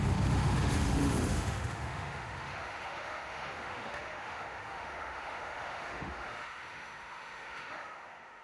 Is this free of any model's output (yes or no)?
no